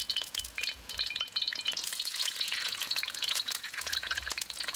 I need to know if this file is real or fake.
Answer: fake